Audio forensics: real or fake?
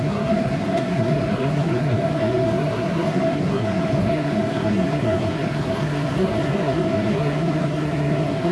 fake